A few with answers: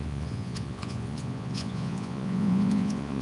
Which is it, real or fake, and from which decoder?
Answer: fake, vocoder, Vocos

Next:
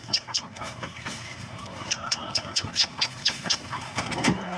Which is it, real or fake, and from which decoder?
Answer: fake, codec, SNAC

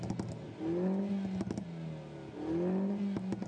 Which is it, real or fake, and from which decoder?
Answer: real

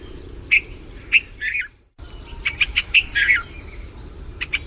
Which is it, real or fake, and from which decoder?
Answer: real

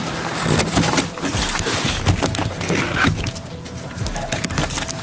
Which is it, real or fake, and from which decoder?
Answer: real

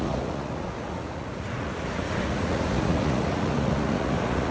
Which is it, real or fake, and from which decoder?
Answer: fake, vocoder, Vocos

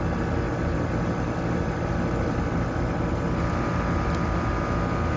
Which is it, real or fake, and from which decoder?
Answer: real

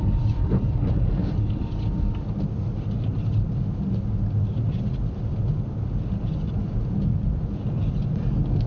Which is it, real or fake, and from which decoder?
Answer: real